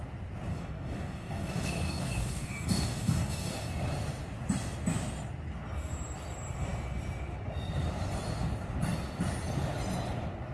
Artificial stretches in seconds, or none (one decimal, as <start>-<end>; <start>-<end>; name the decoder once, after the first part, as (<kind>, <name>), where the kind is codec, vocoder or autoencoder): 0.5-3.7 (codec, DAC)